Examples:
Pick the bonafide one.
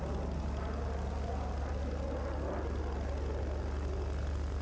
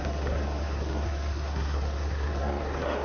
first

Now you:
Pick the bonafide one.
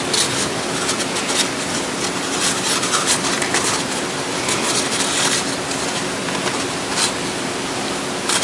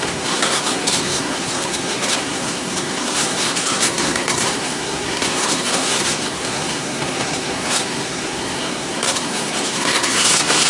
first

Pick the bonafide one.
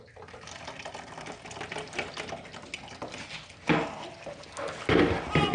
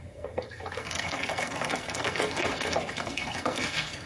first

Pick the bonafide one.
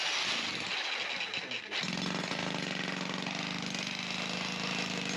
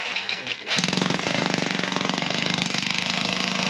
first